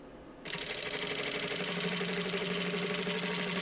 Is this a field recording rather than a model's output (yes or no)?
yes